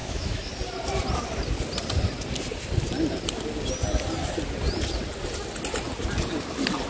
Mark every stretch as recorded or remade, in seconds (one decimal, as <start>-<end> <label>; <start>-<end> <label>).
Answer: 0.0-0.5 remade; 0.5-6.9 recorded